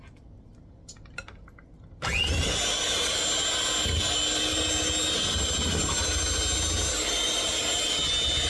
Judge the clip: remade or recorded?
recorded